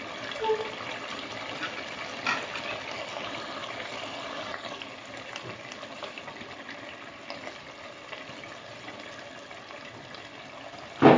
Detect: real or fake real